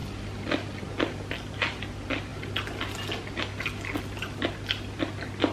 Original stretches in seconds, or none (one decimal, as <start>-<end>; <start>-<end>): 0.0-5.5